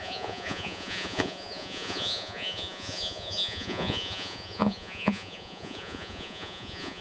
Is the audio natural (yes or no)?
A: no